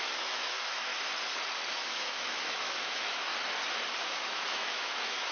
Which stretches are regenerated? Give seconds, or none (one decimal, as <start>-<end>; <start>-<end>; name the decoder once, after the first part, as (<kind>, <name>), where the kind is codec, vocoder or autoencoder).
0.0-0.9 (autoencoder, DAC-VAE); 1.7-3.3; 4.0-5.3